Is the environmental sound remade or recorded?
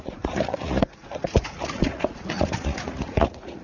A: remade